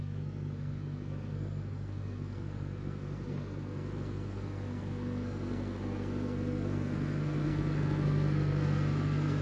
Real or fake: fake